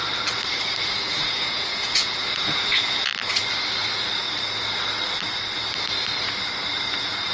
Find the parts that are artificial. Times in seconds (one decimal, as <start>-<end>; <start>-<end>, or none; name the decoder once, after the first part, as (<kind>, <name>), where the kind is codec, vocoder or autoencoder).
0.8-3.1 (vocoder, Vocos)